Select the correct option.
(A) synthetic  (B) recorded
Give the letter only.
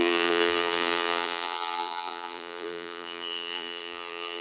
A